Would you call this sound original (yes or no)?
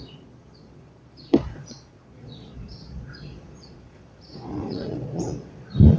no